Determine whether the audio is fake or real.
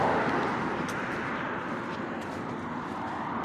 real